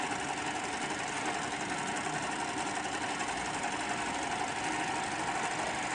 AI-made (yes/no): no